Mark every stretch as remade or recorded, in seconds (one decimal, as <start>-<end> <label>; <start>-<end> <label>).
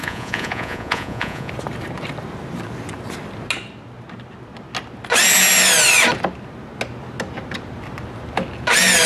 0.0-1.5 remade; 1.5-9.1 recorded